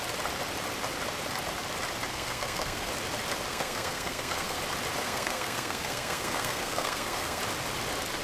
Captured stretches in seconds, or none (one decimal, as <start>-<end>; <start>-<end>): 0.0-2.1; 2.9-3.5; 4.6-5.0; 7.4-8.2